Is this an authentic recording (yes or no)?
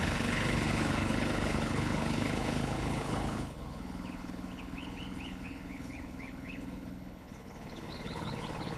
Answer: no